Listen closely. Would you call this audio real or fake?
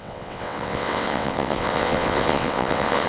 fake